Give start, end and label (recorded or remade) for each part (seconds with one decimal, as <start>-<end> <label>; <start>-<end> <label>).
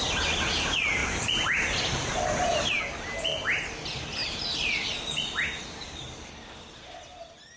0.0-7.6 recorded